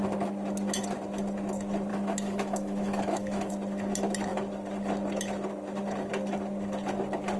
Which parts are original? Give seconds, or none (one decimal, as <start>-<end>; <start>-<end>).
0.0-1.9; 3.5-7.4